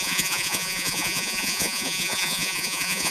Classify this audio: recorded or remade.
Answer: remade